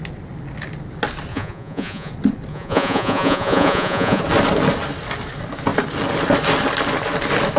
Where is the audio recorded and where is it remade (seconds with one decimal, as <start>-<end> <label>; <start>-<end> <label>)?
0.0-1.3 recorded; 1.3-2.1 remade; 2.1-2.5 recorded; 2.5-4.2 remade; 4.2-7.6 recorded